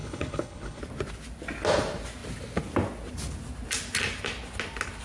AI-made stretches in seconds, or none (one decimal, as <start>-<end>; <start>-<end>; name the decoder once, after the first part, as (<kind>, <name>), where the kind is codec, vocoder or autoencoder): 0.0-0.8 (codec, HILCodec)